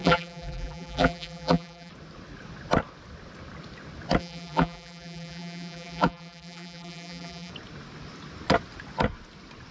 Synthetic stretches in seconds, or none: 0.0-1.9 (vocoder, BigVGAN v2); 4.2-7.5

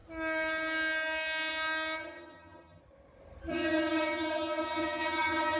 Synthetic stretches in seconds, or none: 2.0-2.8 (vocoder, HiFi-GAN); 3.5-5.6

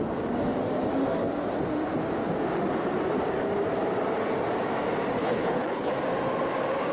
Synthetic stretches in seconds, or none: 5.2-5.9 (codec, HILCodec)

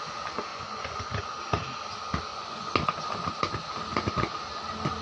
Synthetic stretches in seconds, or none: 0.5-1.3 (vocoder, Vocos); 2.3-3.0

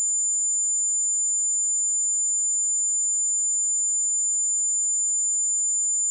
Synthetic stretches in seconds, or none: none